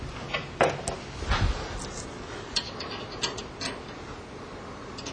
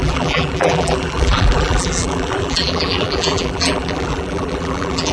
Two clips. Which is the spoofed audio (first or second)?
second